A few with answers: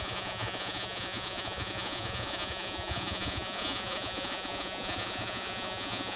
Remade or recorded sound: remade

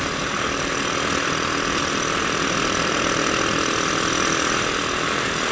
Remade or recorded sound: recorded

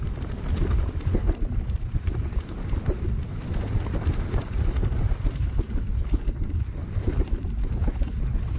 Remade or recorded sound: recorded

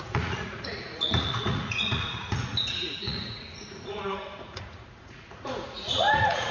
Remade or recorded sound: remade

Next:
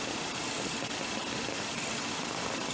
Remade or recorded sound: recorded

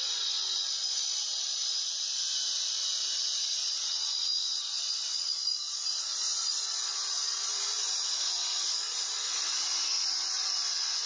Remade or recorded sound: remade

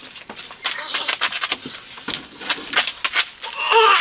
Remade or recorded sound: recorded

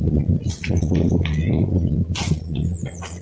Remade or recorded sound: remade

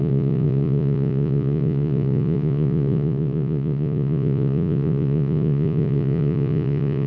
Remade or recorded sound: remade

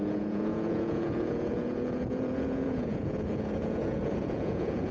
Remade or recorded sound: remade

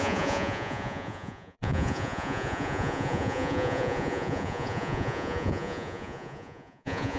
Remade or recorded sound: remade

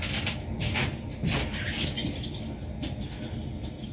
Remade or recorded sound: recorded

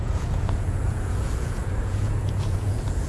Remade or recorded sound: remade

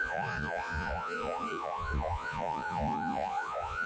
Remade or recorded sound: remade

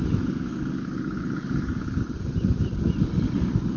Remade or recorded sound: recorded